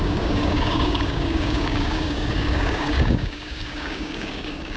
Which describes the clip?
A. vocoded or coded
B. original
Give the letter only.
A